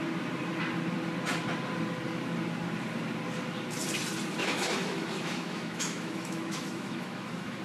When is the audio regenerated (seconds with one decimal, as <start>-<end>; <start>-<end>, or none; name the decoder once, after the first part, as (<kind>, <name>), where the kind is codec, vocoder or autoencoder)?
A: 4.4-7.6 (autoencoder, DAC-VAE)